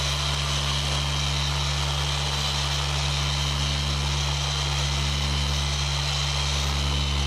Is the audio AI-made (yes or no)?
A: no